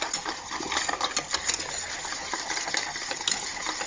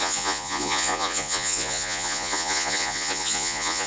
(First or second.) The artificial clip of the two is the second